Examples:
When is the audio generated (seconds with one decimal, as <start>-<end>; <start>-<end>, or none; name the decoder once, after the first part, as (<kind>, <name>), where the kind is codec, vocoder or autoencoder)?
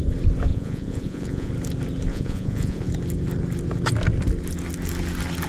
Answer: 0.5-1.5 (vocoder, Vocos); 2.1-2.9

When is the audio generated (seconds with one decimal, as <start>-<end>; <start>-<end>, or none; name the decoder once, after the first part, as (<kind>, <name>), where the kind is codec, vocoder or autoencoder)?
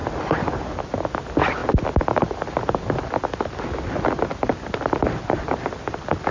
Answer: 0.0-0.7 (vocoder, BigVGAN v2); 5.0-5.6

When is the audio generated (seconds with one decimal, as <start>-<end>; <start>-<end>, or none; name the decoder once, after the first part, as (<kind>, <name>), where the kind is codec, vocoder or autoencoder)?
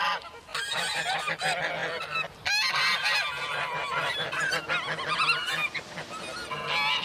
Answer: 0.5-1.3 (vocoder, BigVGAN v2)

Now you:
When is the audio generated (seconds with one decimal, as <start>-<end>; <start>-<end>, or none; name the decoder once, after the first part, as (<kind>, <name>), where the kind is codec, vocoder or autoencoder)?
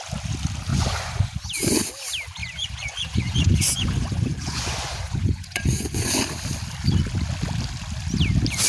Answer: 0.7-1.5 (vocoder, Vocos); 2.4-6.2